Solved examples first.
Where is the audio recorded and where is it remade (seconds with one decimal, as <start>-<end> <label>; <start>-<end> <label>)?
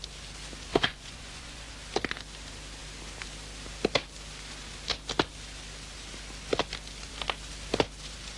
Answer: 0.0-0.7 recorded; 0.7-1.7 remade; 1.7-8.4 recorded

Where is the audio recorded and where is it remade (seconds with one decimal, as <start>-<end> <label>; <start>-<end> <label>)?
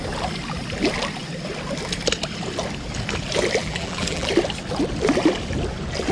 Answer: 0.0-3.6 recorded; 3.6-4.3 remade; 4.3-6.1 recorded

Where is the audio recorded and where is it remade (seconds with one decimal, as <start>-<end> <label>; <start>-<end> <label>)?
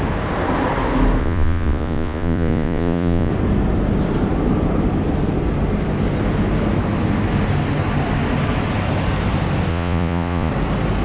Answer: 0.0-1.2 recorded; 1.2-3.3 remade; 3.3-9.7 recorded; 9.7-10.5 remade; 10.5-11.0 recorded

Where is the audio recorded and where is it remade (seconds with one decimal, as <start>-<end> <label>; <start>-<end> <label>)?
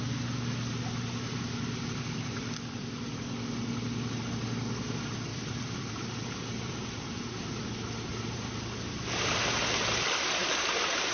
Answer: 0.0-5.3 recorded; 5.3-7.5 remade; 7.5-8.1 recorded; 8.1-9.6 remade; 9.6-10.4 recorded; 10.4-11.1 remade